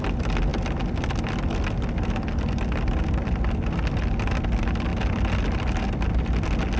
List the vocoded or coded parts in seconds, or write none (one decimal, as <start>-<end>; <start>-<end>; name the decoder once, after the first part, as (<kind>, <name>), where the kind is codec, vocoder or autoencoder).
none